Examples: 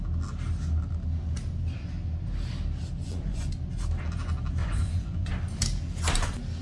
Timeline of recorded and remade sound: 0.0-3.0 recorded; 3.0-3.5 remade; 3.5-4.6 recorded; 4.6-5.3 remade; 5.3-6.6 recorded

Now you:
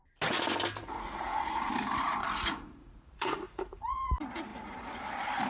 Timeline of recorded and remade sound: 0.0-0.8 recorded; 0.8-1.7 remade; 1.7-2.2 recorded; 2.2-4.1 remade; 4.1-5.5 recorded

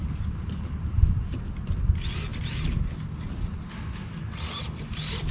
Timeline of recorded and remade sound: 0.0-5.3 recorded

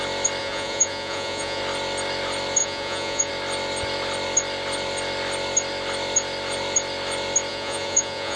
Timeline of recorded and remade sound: 0.0-0.4 recorded; 0.4-1.6 remade; 1.6-2.6 recorded; 2.6-3.3 remade; 3.3-7.5 recorded; 7.5-8.4 remade

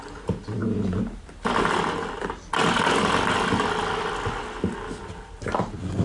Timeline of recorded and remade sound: 0.0-6.0 recorded

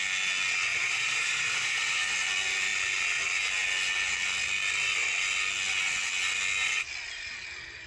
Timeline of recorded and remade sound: 0.0-0.7 recorded; 0.7-1.8 remade; 1.8-7.9 recorded